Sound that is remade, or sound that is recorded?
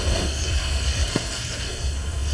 remade